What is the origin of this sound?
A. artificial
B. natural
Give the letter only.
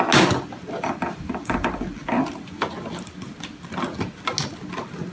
B